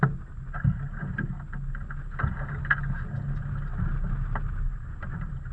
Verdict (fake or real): real